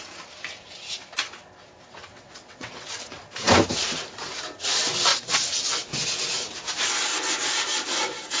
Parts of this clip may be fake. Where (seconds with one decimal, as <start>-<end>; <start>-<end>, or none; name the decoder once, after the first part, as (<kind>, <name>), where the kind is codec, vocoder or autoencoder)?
2.1-3.2 (vocoder, WaveNeXt); 5.1-5.7